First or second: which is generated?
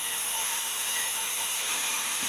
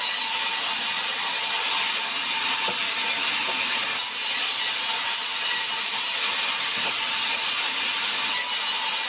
first